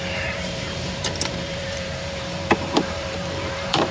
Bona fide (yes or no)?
no